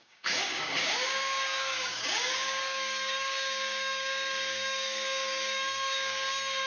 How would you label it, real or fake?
fake